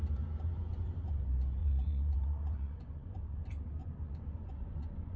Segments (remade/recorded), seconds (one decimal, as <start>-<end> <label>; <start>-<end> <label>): 0.0-1.6 recorded; 1.6-3.4 remade; 3.4-3.8 recorded; 3.8-5.2 remade